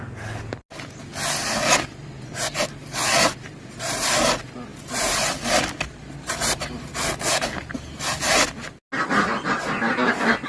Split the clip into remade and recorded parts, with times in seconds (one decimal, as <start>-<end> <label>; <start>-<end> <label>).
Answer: 0.0-4.7 recorded; 4.7-7.0 remade; 7.0-10.5 recorded